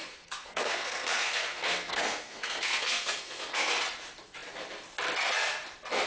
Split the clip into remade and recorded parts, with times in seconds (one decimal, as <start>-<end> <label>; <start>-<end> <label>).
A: 0.0-3.7 remade; 3.7-6.1 recorded